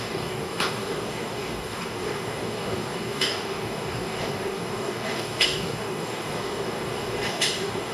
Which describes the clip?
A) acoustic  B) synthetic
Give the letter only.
B